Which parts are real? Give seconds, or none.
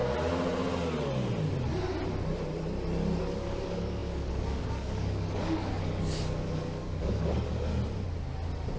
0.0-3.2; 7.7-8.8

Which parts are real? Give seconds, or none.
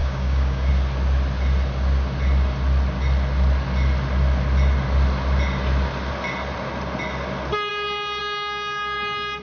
0.7-9.4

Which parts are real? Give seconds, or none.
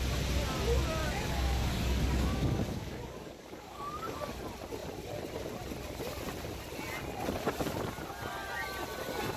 0.0-1.0; 4.3-9.4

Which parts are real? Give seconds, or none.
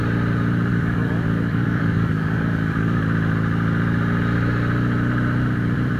0.0-0.7; 3.0-6.0